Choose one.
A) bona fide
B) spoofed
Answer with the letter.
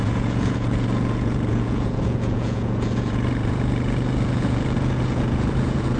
B